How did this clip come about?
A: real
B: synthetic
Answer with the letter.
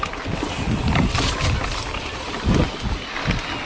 A